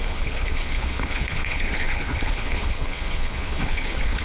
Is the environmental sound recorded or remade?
remade